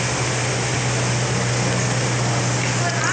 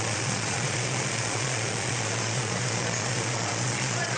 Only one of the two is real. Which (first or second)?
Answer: first